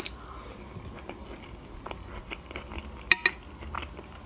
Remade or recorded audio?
recorded